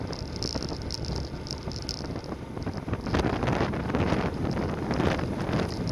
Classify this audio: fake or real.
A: real